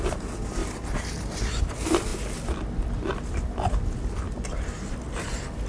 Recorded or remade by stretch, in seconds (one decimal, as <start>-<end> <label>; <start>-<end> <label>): 0.0-5.7 recorded